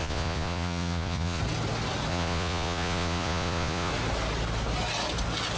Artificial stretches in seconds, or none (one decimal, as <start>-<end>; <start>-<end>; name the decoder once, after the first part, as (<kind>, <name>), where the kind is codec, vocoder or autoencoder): 0.0-1.4 (vocoder, Vocos); 2.1-3.9

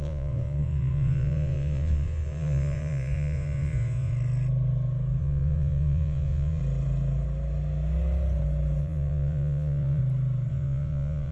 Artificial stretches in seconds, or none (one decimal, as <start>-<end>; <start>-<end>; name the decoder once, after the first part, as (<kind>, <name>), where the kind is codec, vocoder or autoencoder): 0.0-4.1 (vocoder, Vocos); 5.2-6.6; 8.8-10.0; 10.5-11.3

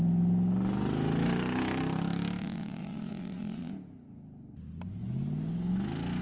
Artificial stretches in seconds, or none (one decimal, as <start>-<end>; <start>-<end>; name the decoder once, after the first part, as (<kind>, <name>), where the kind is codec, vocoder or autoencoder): 2.4-3.7 (vocoder, Vocos)

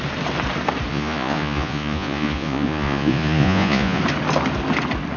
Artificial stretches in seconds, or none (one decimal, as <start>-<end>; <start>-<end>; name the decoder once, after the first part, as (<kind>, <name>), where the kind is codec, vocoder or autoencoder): 0.9-4.0 (vocoder, Vocos)

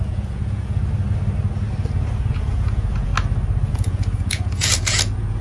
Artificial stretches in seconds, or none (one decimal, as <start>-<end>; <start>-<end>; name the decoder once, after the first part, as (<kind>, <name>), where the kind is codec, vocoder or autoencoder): 0.0-0.8 (vocoder, Vocos); 2.3-3.1; 3.7-5.4

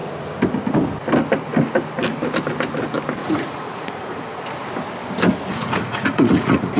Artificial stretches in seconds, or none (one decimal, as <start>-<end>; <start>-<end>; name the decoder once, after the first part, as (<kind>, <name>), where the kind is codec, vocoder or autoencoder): 3.2-4.5 (vocoder, Vocos); 5.6-6.8

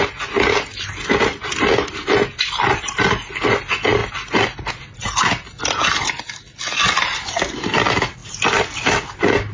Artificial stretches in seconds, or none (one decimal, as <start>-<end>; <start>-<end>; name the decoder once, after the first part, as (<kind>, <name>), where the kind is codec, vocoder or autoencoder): none